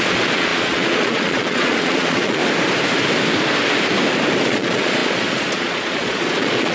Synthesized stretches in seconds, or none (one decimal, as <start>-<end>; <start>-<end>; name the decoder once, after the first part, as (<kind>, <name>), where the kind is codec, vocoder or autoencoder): 0.0-2.4 (vocoder, Vocos); 4.4-6.7